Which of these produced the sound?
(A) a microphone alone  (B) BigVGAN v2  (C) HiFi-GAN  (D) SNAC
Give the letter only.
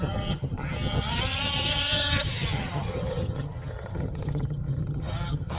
C